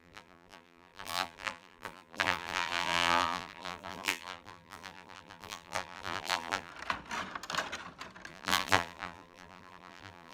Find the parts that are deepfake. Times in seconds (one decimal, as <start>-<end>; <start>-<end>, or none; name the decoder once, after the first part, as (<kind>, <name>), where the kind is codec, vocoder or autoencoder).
0.0-6.7 (vocoder, BigVGAN v2); 8.3-10.3